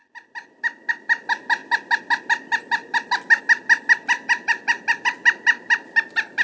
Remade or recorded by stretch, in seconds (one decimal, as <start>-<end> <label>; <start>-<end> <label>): 0.0-6.4 recorded